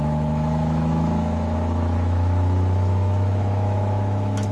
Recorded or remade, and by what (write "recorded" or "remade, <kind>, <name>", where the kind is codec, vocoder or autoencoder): remade, autoencoder, DAC-VAE